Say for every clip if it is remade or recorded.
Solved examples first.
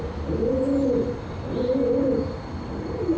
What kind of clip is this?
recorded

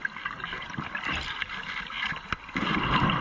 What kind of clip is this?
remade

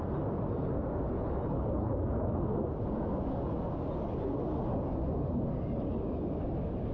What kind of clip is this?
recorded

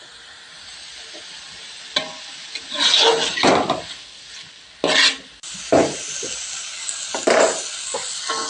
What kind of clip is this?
recorded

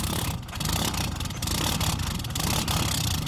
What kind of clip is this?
recorded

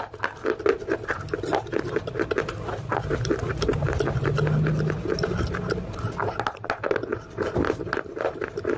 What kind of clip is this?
recorded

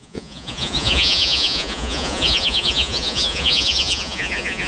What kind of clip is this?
remade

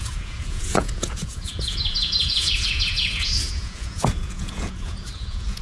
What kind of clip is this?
remade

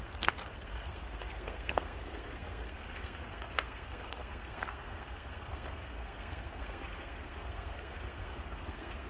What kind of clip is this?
remade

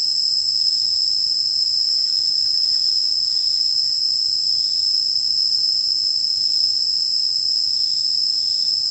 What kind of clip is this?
remade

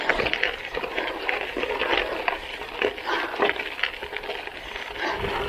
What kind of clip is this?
recorded